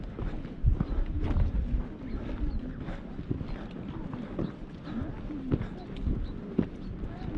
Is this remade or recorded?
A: recorded